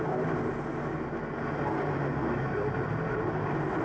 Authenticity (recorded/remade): recorded